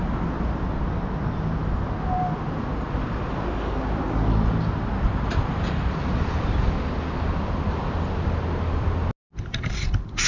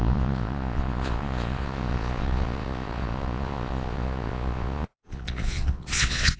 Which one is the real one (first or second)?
first